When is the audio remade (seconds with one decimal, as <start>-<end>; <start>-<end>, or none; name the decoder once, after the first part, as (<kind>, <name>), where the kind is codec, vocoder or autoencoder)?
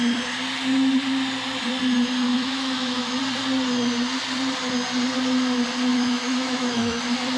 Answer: 2.3-3.2 (autoencoder, DAC-VAE); 5.9-7.0